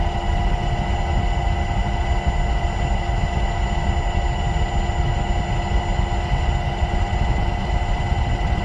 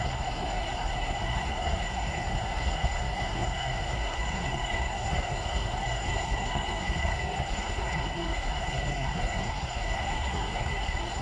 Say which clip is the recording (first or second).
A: first